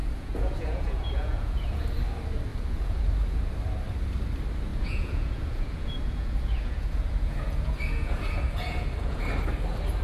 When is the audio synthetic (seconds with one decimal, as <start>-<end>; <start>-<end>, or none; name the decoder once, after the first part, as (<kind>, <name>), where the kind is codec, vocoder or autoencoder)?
0.0-1.8 (vocoder, Vocos); 2.5-3.5; 4.7-9.2